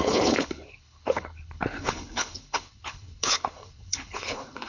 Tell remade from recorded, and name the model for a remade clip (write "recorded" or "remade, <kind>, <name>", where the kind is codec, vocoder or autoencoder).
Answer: remade, codec, HILCodec